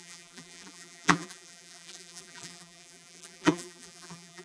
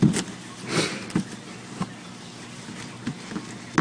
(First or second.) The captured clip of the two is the second